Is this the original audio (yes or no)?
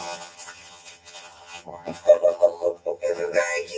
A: no